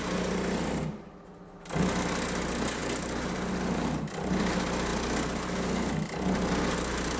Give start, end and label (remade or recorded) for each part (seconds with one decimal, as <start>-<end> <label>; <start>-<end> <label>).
0.0-7.2 recorded